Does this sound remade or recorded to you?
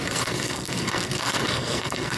remade